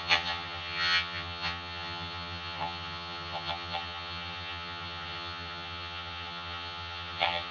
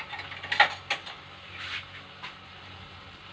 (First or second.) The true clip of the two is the second